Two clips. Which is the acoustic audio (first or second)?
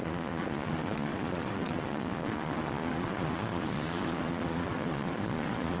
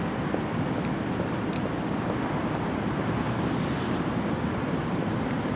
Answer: second